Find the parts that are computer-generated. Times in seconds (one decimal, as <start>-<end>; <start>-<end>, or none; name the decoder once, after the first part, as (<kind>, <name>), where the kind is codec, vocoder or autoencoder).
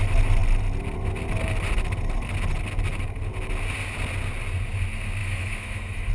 5.2-6.1 (autoencoder, DAC-VAE)